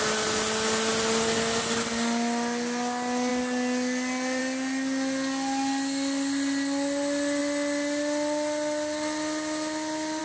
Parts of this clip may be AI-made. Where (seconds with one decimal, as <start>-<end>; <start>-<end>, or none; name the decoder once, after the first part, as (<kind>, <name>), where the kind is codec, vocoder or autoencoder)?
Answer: none